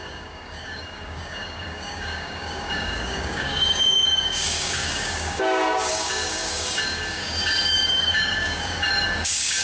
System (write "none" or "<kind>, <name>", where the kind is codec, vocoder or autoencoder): codec, DAC